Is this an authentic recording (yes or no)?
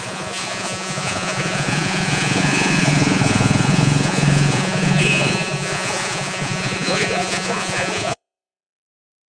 no